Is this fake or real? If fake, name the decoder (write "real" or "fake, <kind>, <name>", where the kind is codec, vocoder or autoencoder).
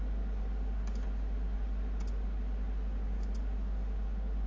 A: real